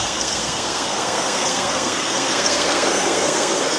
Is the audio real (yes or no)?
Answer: no